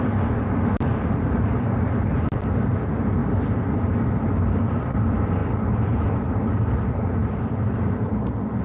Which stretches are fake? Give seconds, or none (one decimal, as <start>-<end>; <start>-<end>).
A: none